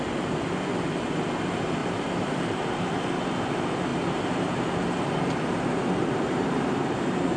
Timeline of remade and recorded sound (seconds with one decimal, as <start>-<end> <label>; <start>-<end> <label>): 0.0-1.8 recorded; 1.8-2.8 remade; 2.8-3.9 recorded; 3.9-7.4 remade